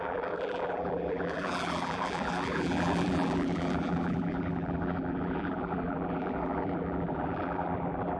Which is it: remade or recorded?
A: remade